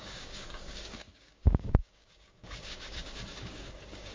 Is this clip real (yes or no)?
no